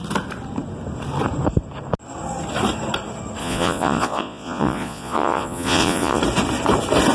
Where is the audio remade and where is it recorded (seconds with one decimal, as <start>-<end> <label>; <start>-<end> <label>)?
0.0-3.4 recorded; 3.4-6.2 remade; 6.2-7.1 recorded